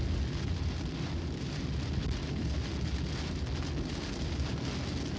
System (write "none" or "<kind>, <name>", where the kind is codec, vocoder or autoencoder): none